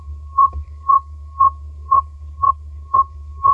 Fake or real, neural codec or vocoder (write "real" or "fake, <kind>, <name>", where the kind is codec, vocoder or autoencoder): fake, codec, SNAC